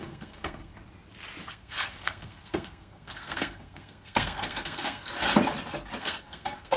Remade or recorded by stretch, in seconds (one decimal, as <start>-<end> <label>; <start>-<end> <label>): 0.0-0.7 remade; 0.7-1.5 recorded; 1.5-5.1 remade; 5.1-6.0 recorded; 6.0-6.8 remade